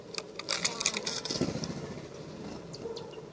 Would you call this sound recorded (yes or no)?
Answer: yes